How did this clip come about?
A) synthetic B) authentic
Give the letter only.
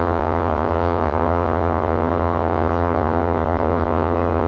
A